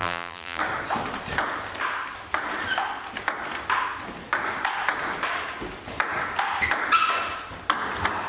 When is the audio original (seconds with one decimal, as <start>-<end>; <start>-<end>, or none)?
0.6-8.3